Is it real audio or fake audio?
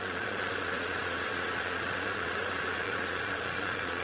fake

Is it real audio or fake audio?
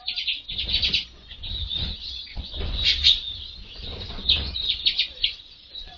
fake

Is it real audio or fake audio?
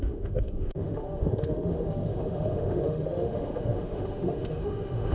fake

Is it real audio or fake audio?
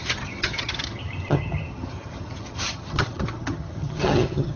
fake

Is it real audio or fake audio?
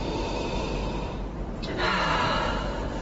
fake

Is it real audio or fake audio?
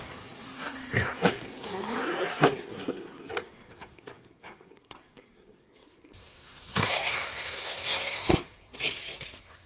fake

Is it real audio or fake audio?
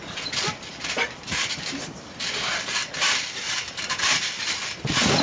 fake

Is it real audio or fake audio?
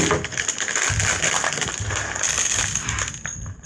real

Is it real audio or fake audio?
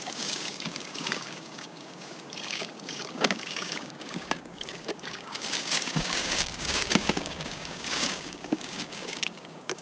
fake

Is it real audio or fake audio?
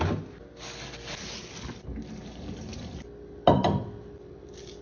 real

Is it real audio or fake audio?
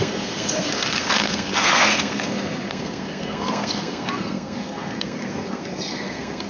fake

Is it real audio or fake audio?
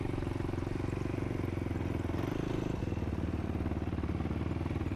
real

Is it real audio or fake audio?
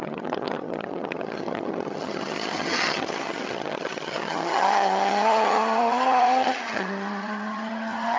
fake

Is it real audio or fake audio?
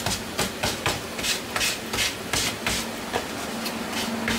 real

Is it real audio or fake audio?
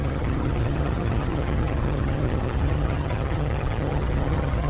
fake